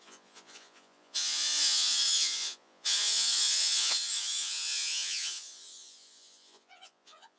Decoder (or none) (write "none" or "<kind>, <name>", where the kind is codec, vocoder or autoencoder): vocoder, Vocos